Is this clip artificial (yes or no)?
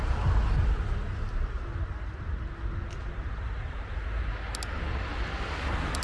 no